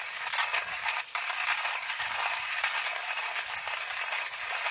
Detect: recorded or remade recorded